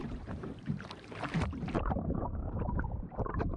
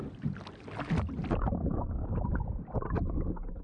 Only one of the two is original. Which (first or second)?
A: second